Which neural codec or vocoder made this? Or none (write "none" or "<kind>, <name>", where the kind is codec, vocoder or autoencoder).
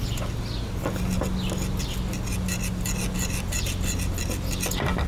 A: none